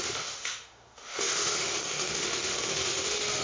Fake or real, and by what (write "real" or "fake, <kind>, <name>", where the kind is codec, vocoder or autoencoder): fake, autoencoder, DAC-VAE